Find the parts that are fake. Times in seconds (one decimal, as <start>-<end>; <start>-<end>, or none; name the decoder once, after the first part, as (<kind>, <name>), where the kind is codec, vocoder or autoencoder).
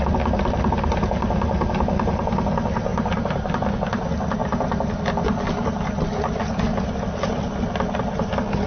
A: 2.9-3.5 (vocoder, BigVGAN v2); 4.4-5.0